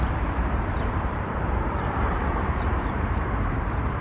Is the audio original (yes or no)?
no